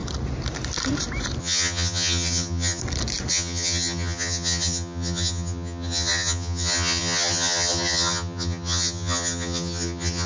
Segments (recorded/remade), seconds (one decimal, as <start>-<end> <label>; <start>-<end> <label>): 0.0-1.4 recorded; 1.4-2.8 remade; 2.8-3.3 recorded; 3.3-10.3 remade